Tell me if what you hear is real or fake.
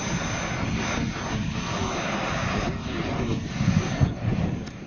real